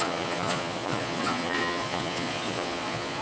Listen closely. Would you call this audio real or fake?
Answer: fake